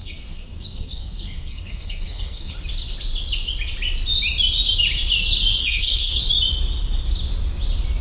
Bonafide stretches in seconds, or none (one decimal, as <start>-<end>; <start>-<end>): 2.5-5.6; 6.2-8.0